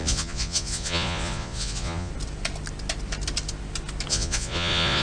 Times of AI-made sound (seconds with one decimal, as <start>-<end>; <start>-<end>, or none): 0.0-2.1; 4.1-5.0